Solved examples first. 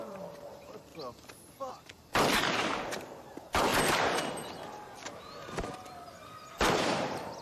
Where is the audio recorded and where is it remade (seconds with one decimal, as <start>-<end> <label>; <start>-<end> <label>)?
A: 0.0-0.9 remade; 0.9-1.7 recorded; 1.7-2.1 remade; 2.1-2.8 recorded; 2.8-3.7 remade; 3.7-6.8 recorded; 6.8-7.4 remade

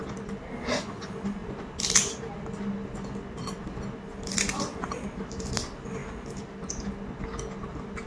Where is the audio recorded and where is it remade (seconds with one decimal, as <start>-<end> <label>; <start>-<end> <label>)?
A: 0.0-8.1 recorded

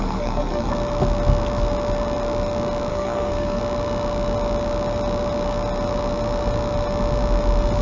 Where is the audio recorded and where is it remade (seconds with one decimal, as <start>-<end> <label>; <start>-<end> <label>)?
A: 0.0-0.7 remade; 0.7-2.9 recorded; 2.9-3.6 remade; 3.6-7.8 recorded